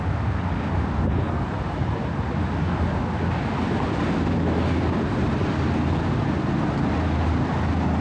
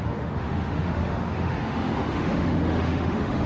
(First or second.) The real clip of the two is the first